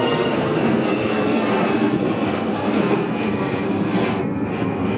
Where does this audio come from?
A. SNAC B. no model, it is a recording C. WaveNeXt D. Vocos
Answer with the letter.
A